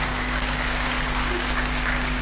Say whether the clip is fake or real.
fake